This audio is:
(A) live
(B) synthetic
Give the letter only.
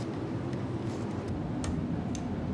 A